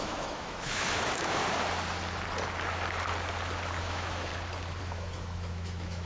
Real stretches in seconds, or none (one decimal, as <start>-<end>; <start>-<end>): 1.4-3.8; 4.3-4.8